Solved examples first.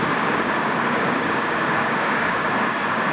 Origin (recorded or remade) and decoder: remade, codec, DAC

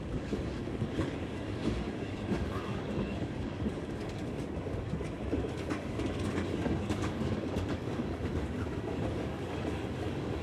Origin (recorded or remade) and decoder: remade, codec, DAC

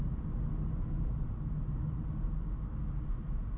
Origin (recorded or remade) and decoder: recorded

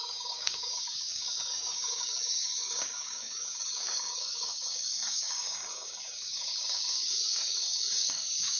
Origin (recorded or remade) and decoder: remade, codec, DAC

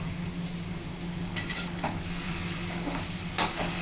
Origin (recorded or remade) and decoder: remade, codec, DAC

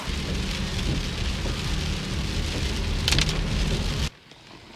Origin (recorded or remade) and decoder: recorded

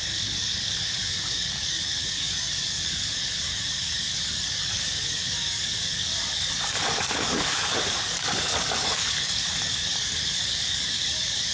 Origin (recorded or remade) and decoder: remade, codec, DAC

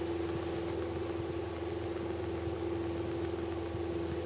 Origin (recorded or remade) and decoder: recorded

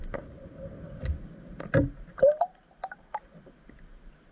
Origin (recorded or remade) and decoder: recorded